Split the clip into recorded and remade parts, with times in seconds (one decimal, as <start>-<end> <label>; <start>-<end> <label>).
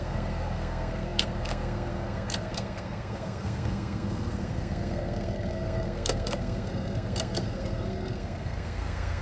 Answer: 0.0-9.2 remade